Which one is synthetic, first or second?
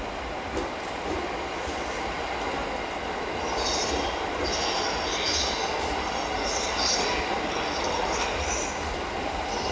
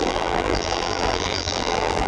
second